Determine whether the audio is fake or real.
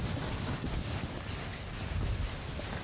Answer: real